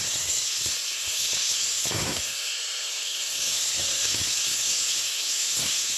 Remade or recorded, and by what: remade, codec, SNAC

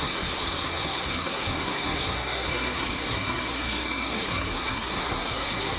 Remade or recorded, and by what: remade, codec, SNAC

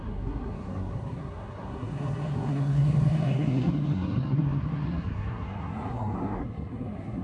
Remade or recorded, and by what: remade, codec, SNAC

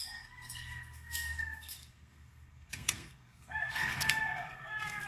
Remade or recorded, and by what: remade, codec, SNAC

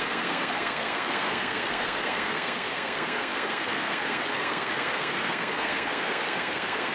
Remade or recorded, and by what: remade, codec, SNAC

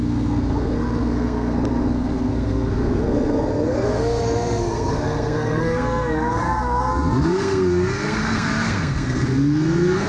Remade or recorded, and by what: remade, codec, SNAC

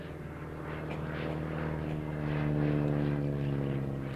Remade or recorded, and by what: recorded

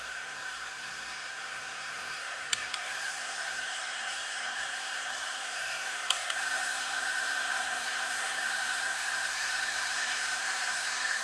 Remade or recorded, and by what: remade, codec, SNAC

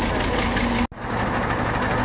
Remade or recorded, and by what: recorded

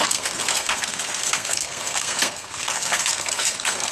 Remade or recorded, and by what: remade, codec, SNAC